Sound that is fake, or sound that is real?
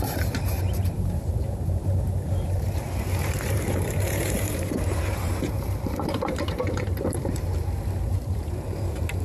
fake